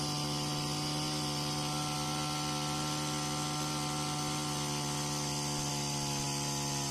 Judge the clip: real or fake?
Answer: real